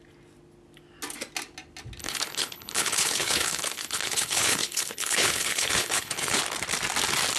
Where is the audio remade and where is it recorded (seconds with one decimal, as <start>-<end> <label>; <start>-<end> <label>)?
0.0-2.0 recorded; 2.0-6.4 remade; 6.4-7.4 recorded